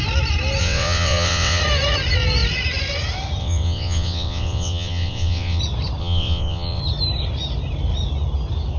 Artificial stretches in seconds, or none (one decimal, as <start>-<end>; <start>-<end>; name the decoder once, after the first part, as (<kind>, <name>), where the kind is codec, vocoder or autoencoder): 0.6-1.6 (vocoder, WaveNeXt); 3.4-5.6; 6.0-6.8

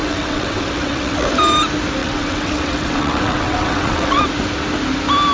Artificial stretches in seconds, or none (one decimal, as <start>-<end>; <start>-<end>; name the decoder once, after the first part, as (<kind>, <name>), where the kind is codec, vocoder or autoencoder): 0.0-1.3 (vocoder, WaveNeXt); 2.0-4.2

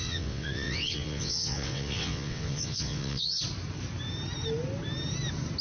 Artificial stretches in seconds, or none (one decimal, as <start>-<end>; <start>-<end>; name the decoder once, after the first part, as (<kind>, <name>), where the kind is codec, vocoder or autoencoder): 0.0-3.4 (vocoder, WaveNeXt)

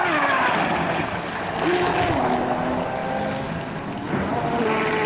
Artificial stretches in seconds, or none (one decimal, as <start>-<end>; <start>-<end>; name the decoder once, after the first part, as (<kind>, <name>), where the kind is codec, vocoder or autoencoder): none

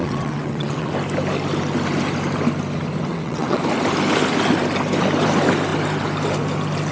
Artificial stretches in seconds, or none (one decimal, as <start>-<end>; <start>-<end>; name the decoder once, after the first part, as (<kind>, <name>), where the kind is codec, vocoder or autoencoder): 0.0-0.9 (vocoder, WaveNeXt); 3.1-3.6